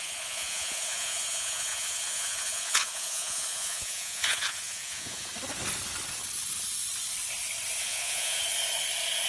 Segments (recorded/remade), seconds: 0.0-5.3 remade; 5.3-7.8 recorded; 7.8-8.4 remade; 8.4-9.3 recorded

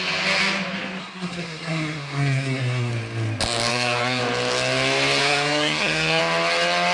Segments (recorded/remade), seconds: 0.0-1.0 recorded; 1.0-2.9 remade; 2.9-3.7 recorded; 3.7-4.2 remade; 4.2-5.2 recorded; 5.2-6.2 remade; 6.2-6.9 recorded

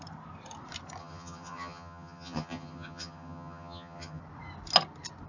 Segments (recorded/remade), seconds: 0.0-1.0 recorded; 1.0-4.2 remade; 4.2-5.3 recorded

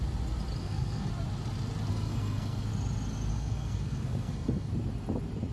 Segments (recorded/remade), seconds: 0.0-0.6 recorded; 0.6-1.1 remade; 1.1-1.9 recorded; 1.9-2.7 remade; 2.7-3.3 recorded; 3.3-4.7 remade; 4.7-5.5 recorded

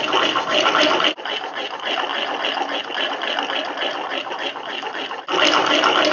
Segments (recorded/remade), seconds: 0.0-6.1 recorded

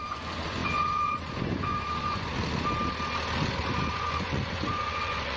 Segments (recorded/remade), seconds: 0.0-2.3 remade; 2.3-3.9 recorded; 3.9-5.4 remade

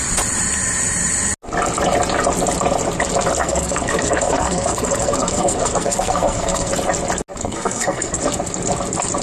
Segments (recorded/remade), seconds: 0.0-3.4 recorded; 3.4-6.7 remade; 6.7-7.4 recorded; 7.4-8.2 remade; 8.2-9.2 recorded

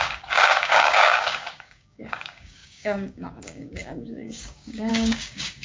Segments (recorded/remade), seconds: 0.0-5.6 remade